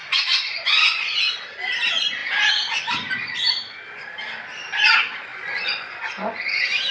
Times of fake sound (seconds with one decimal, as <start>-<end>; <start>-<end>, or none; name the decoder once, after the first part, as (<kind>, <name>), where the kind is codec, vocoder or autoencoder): 0.0-1.2 (vocoder, Vocos); 5.3-5.9